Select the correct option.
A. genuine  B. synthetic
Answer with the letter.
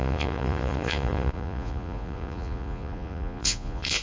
B